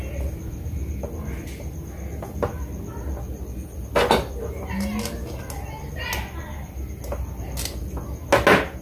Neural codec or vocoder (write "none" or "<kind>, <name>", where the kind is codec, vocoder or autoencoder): none